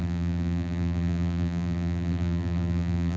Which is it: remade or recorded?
remade